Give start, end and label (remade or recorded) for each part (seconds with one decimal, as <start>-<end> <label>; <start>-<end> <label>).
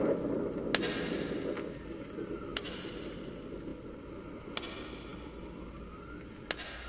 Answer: 0.0-2.5 recorded; 2.5-3.3 remade; 3.3-6.9 recorded